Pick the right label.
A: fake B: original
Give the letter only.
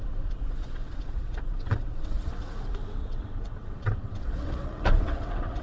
A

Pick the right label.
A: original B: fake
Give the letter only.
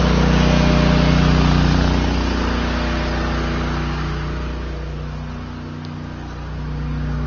A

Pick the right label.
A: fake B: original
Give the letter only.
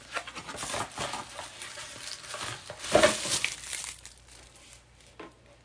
B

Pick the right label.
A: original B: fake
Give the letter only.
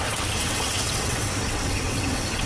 B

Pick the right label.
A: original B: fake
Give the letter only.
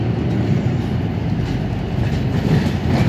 A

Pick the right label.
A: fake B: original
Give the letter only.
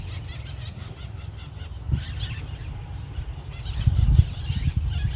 B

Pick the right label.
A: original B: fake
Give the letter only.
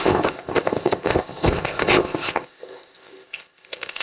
B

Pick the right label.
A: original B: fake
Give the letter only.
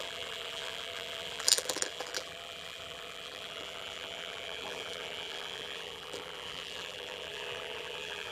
B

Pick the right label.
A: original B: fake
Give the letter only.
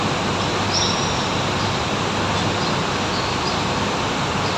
A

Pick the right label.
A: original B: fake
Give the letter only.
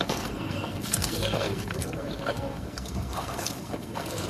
B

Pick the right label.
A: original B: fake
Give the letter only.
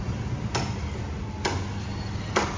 A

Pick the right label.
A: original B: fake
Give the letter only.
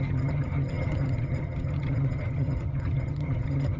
B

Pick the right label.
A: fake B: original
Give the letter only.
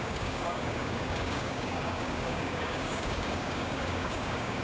A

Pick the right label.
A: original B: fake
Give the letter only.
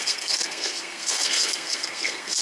B